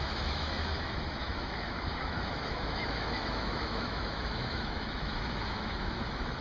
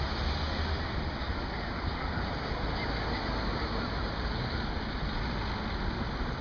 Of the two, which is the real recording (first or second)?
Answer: second